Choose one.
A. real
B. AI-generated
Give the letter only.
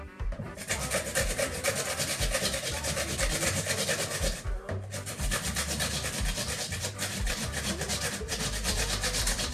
B